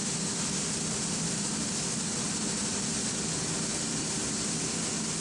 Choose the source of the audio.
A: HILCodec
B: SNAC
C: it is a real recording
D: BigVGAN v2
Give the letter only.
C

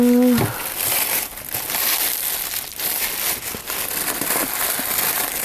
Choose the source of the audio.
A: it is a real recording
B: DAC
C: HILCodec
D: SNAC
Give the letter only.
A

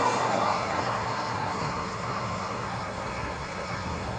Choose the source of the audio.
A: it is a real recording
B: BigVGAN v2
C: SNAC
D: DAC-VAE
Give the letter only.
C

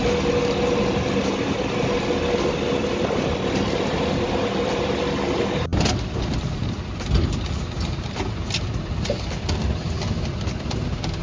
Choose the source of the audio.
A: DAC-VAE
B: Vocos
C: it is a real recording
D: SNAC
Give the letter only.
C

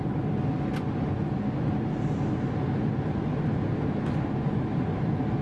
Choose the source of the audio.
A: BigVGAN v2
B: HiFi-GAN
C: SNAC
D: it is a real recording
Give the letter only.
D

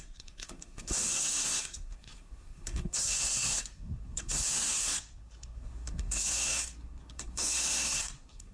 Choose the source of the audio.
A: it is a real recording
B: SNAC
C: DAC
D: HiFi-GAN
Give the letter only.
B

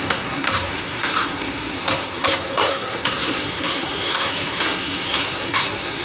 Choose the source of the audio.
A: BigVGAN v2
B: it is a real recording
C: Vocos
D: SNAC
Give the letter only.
D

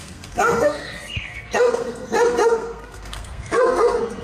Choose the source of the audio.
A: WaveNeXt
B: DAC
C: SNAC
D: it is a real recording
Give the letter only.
C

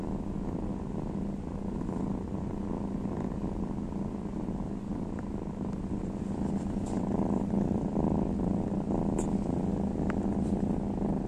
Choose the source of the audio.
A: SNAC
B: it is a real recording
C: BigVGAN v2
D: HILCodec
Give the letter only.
B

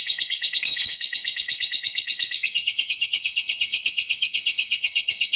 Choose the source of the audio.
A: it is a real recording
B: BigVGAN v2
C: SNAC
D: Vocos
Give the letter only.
C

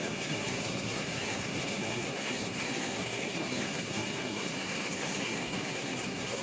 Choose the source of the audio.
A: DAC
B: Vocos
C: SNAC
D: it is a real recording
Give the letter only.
C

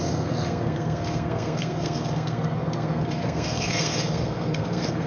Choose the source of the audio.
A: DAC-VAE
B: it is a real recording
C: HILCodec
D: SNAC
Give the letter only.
D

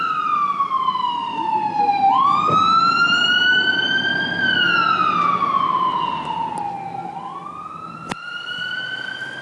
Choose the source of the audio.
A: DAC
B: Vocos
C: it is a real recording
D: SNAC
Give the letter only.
C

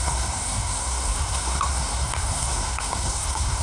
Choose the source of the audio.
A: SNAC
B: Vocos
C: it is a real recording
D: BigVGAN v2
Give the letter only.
A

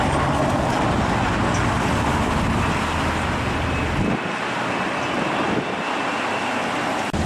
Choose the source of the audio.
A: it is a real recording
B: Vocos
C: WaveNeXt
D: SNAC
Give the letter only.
A